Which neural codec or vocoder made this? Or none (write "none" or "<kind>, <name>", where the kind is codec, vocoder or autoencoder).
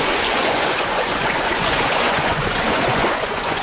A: vocoder, Vocos